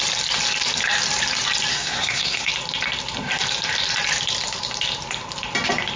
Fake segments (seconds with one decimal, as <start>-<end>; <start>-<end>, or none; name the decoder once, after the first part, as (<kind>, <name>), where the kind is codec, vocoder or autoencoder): 1.7-2.5 (codec, SNAC)